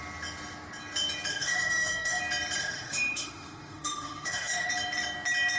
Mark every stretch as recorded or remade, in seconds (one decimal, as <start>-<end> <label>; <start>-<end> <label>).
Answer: 0.0-1.3 recorded; 1.3-2.2 remade; 2.2-2.6 recorded; 2.6-4.7 remade; 4.7-5.6 recorded